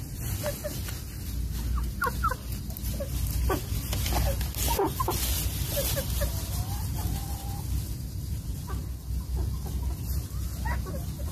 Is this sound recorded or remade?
recorded